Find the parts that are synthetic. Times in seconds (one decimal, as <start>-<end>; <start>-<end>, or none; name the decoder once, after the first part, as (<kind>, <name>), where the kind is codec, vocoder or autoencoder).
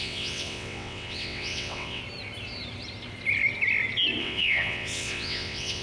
0.0-2.0 (vocoder, WaveNeXt); 4.2-5.8